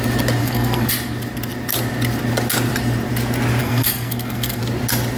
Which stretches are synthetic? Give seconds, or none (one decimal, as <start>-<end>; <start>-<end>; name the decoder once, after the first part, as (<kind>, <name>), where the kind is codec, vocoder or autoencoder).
0.4-0.9 (codec, SNAC); 3.6-4.6